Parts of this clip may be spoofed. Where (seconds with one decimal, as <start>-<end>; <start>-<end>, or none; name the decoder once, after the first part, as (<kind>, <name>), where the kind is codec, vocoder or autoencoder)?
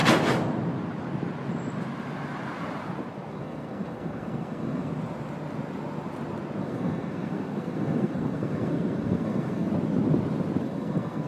3.3-4.9 (codec, SNAC); 6.6-9.7; 10.6-11.3